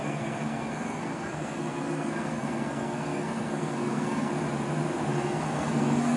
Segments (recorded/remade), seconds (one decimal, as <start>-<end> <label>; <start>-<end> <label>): 0.0-4.3 remade; 4.3-5.1 recorded; 5.1-6.2 remade